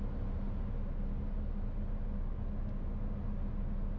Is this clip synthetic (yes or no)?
no